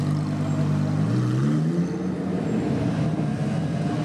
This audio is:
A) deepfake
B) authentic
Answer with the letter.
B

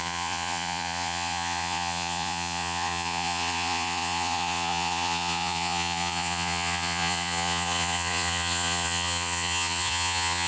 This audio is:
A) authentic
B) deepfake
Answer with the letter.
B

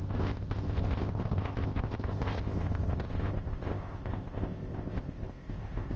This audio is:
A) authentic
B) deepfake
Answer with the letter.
B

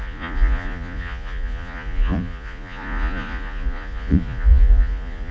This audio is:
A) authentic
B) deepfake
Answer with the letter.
B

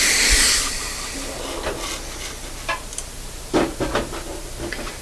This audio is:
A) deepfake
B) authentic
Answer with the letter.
B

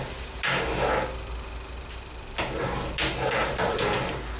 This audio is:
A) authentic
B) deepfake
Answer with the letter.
A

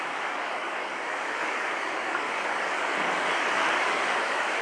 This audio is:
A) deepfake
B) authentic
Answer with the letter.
A